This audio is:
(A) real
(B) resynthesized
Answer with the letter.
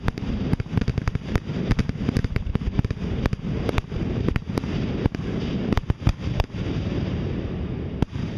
B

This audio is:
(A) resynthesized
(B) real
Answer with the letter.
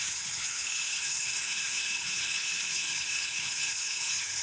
A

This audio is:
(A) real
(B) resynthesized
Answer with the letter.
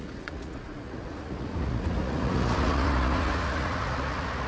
B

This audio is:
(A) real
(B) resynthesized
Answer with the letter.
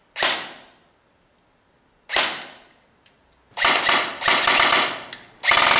A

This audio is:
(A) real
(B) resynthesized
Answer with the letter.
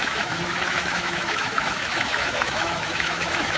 B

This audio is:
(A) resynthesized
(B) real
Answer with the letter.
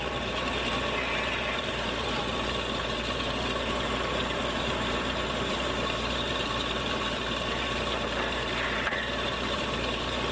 A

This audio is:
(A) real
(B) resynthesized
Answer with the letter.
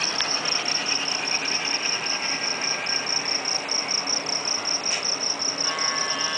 A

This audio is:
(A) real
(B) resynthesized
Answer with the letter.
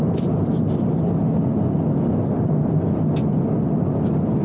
A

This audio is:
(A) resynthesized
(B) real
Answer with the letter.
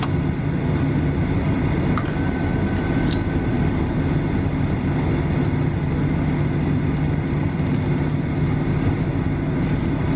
B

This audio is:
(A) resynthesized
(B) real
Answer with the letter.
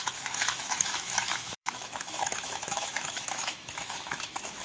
A